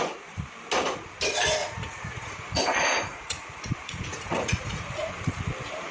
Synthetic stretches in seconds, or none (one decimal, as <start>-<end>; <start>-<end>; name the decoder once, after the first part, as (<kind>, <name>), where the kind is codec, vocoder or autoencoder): 1.6-5.1 (vocoder, Vocos)